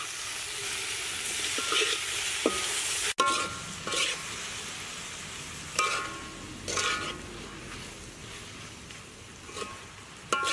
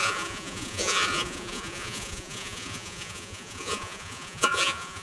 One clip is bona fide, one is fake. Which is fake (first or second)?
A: second